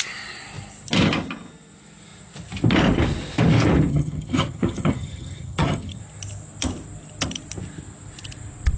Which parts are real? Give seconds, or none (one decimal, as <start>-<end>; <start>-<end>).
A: 0.0-3.9; 6.0-8.8